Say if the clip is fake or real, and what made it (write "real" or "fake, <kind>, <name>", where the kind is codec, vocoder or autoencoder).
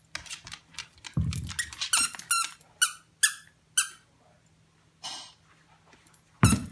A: real